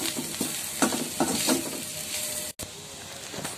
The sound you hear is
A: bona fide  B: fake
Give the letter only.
A